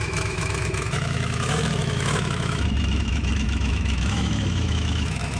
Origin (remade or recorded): remade